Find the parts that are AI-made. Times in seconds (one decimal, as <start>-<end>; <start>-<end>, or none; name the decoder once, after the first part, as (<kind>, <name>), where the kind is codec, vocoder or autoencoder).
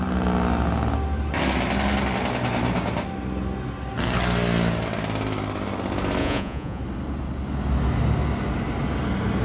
6.2-6.8 (vocoder, Vocos)